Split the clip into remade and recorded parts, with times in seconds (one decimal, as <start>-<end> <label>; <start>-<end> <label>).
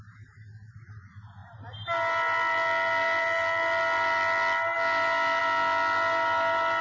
0.0-6.8 recorded